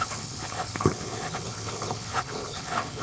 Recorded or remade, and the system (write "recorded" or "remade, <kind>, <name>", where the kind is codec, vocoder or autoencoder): remade, codec, HILCodec